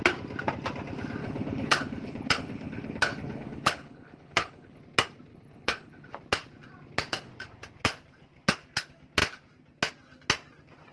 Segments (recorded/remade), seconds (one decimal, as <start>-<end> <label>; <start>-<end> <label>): 0.0-1.2 recorded; 1.2-4.8 remade; 4.8-5.3 recorded; 5.3-6.1 remade; 6.1-10.9 recorded